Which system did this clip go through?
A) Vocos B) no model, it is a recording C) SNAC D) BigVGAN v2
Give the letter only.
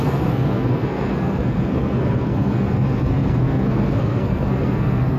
C